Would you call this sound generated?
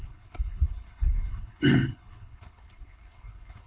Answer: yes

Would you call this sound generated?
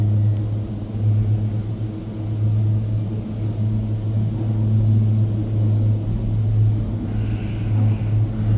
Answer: no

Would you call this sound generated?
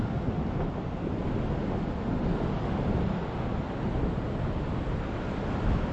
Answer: no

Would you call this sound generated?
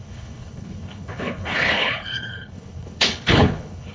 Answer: yes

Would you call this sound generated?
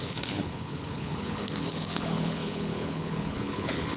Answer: yes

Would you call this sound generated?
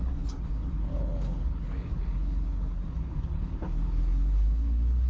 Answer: yes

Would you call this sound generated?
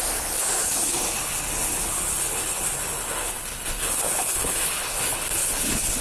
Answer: yes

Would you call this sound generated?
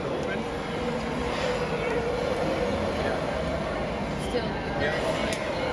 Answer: no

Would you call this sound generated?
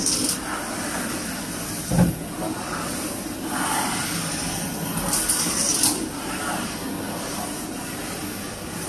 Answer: no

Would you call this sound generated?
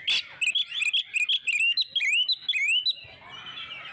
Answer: no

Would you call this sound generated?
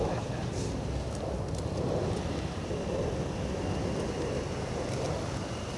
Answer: no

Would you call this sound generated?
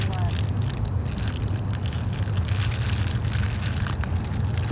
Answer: no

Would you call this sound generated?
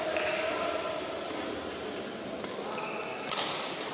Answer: no